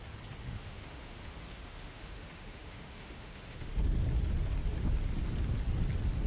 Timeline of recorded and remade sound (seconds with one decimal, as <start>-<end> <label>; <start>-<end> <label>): 0.0-0.4 recorded; 0.4-4.0 remade; 4.0-6.3 recorded